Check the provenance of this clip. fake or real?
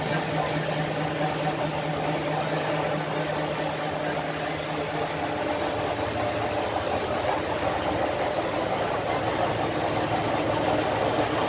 real